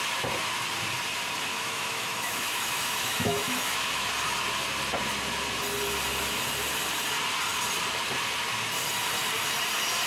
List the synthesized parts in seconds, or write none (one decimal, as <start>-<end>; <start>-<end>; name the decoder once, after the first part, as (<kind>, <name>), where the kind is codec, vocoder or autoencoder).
1.5-4.1 (autoencoder, DAC-VAE)

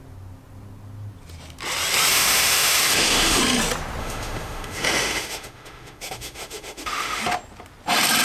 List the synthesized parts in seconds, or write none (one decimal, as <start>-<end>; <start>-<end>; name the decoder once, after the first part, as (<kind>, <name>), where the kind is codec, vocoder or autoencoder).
2.1-3.4 (autoencoder, DAC-VAE); 4.0-7.2

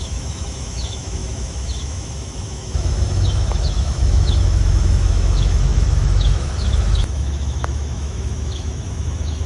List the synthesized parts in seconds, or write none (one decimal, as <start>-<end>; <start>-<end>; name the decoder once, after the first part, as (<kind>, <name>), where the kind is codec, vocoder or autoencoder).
0.0-9.5 (autoencoder, DAC-VAE)